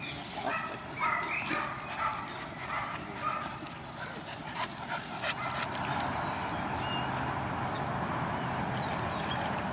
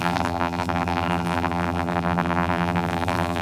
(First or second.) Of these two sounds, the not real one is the second